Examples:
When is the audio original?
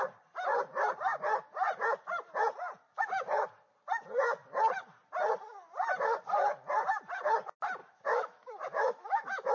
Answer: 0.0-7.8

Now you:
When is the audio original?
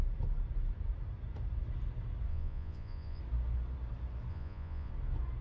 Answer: 0.0-2.3; 3.2-4.3; 4.9-5.4